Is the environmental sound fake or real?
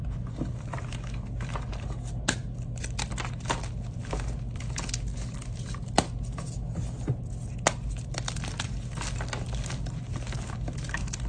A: real